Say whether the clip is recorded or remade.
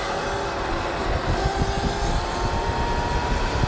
recorded